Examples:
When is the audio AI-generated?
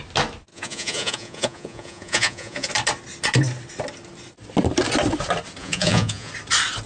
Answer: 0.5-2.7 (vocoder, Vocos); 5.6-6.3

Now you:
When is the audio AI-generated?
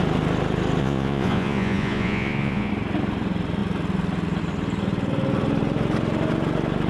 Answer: 0.8-2.7 (vocoder, Vocos)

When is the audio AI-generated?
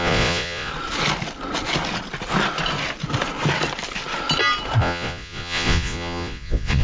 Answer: 0.0-0.7 (vocoder, Vocos); 4.8-6.8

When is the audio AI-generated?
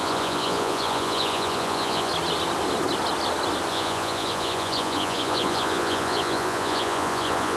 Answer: 0.0-2.1 (vocoder, Vocos); 3.7-7.6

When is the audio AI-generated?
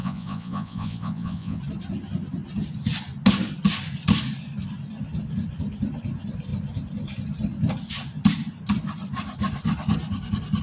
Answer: 0.0-1.6 (vocoder, Vocos)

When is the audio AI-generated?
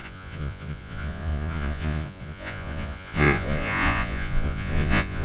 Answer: 0.0-5.2 (vocoder, Vocos)